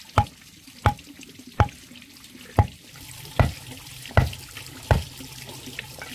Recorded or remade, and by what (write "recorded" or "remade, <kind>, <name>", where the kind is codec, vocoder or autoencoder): recorded